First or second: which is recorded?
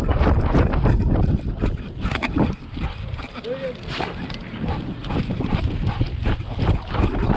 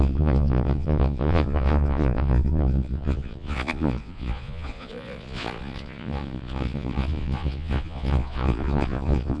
first